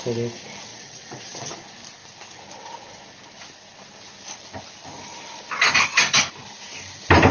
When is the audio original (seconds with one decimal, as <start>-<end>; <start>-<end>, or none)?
0.0-0.7; 1.5-7.3